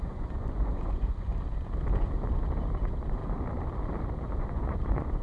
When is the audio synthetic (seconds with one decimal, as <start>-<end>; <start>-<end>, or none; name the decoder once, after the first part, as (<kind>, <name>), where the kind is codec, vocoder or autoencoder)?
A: 0.0-1.3 (vocoder, Vocos); 2.8-3.2; 4.4-5.2